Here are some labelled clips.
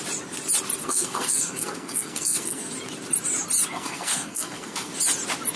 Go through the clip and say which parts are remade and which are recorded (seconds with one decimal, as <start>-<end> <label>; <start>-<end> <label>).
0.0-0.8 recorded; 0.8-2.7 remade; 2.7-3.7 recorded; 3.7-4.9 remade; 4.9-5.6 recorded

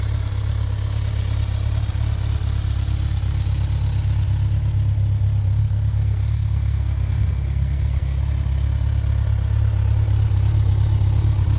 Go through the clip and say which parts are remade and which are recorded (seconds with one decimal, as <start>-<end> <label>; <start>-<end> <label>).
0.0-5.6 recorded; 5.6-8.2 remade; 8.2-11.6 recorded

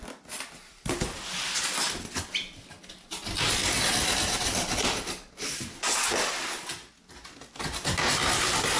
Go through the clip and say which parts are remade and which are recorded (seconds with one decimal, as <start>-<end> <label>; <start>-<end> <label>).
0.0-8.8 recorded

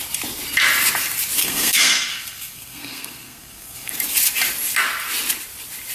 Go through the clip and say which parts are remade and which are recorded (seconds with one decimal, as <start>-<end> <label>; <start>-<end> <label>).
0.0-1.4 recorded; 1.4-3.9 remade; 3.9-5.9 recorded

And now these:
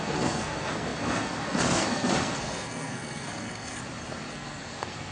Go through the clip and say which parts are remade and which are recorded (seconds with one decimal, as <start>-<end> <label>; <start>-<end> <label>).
0.0-3.8 remade; 3.8-4.3 recorded; 4.3-5.1 remade